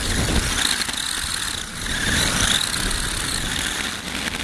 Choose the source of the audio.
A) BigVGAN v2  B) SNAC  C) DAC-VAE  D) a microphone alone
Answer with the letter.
D